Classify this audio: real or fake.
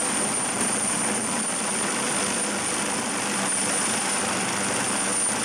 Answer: real